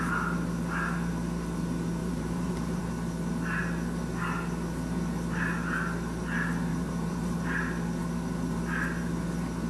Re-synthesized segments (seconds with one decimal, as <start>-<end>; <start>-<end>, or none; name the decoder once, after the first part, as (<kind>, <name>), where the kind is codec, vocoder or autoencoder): 2.0-2.8 (vocoder, BigVGAN v2); 6.7-7.4